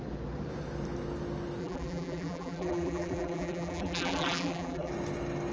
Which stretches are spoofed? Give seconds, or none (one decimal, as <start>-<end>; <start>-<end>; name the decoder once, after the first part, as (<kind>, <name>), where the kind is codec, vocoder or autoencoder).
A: 1.6-4.9 (vocoder, BigVGAN v2)